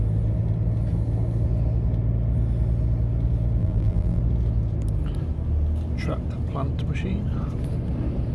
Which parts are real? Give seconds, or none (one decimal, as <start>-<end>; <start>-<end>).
0.0-3.6; 4.2-8.3